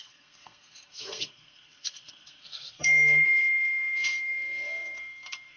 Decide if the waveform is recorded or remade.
remade